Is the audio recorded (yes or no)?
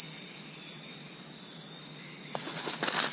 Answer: yes